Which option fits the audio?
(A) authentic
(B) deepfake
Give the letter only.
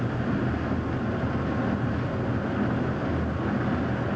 A